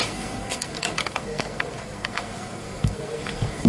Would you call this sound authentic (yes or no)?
no